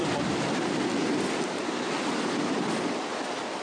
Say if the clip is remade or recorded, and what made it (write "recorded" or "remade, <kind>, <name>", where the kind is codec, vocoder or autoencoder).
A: recorded